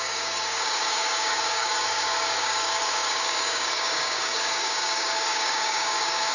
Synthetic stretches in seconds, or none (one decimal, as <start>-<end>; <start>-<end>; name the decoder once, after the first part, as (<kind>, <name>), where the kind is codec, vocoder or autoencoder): 0.0-6.3 (codec, DAC)